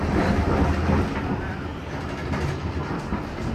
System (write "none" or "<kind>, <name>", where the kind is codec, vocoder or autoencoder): none